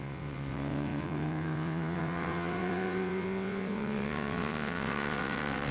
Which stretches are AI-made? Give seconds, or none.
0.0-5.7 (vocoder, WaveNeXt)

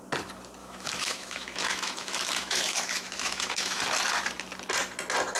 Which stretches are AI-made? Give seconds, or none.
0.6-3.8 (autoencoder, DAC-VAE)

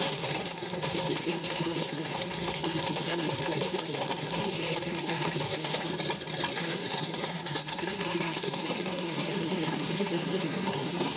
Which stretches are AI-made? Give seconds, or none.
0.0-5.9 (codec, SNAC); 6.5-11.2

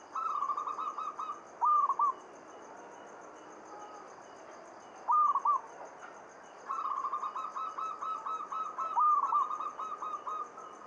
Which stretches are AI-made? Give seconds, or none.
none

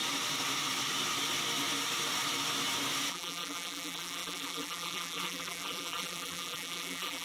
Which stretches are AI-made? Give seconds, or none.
3.1-7.2 (vocoder, BigVGAN v2)

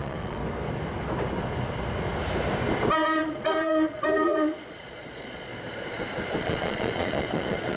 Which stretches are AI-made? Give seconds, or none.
0.0-0.4 (vocoder, Vocos); 3.2-5.5; 6.4-7.8

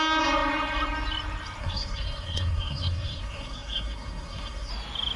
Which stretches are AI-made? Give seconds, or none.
1.6-4.7 (codec, SNAC)